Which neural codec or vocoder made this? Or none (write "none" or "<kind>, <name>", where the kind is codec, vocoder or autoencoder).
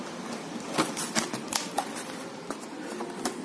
none